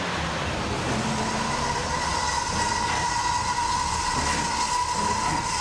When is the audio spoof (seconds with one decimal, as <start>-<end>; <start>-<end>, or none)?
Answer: none